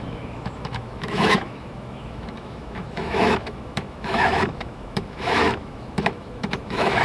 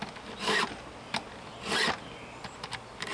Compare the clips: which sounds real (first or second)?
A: second